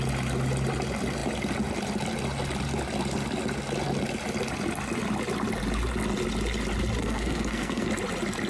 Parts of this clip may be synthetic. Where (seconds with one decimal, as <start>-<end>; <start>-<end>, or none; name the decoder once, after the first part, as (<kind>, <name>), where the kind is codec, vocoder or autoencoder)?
7.0-7.9 (codec, SNAC)